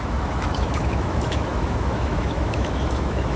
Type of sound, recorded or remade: remade